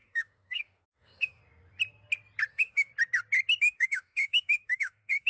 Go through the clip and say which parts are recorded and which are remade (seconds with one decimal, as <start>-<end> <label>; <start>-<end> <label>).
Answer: 0.0-1.4 remade; 1.4-2.5 recorded; 2.5-2.9 remade; 2.9-3.6 recorded; 3.6-5.3 remade

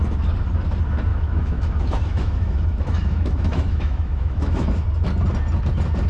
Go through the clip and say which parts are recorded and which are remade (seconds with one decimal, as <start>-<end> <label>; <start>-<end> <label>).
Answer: 0.0-1.1 recorded; 1.1-4.8 remade; 4.8-6.1 recorded

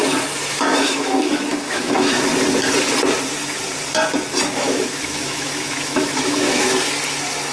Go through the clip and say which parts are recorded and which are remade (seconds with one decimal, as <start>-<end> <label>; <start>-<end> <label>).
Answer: 0.0-0.5 recorded; 0.5-2.3 remade; 2.3-4.4 recorded; 4.4-6.7 remade; 6.7-7.5 recorded

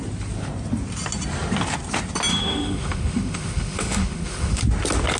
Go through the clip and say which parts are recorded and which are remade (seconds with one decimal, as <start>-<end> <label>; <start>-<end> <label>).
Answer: 0.0-2.3 recorded; 2.3-4.6 remade; 4.6-5.2 recorded

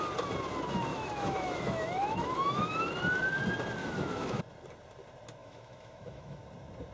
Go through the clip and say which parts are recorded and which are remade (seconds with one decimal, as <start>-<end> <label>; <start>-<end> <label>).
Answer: 0.0-0.9 recorded; 0.9-2.9 remade; 2.9-3.8 recorded; 3.8-4.4 remade; 4.4-5.4 recorded; 5.4-6.4 remade; 6.4-6.9 recorded

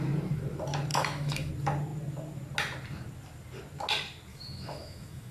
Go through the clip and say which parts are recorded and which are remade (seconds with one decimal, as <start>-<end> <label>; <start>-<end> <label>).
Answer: 0.0-0.9 recorded; 0.9-1.5 remade; 1.5-4.3 recorded; 4.3-5.3 remade

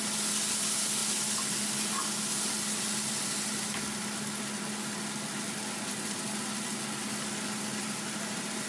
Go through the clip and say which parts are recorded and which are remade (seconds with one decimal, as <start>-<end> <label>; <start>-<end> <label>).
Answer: 0.0-8.7 recorded

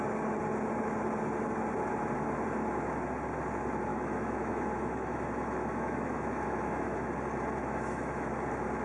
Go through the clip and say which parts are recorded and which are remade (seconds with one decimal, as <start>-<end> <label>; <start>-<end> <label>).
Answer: 0.0-3.9 recorded; 3.9-7.1 remade; 7.1-7.6 recorded; 7.6-8.3 remade; 8.3-8.8 recorded